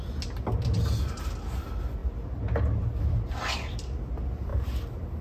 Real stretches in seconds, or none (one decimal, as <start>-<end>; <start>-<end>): 0.0-5.2